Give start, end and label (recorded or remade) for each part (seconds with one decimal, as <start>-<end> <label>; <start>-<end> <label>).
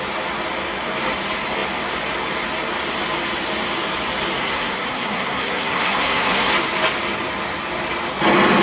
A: 0.0-4.4 recorded; 4.4-6.5 remade; 6.5-8.6 recorded